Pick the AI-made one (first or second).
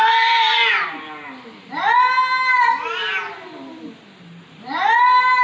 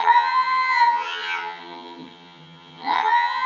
second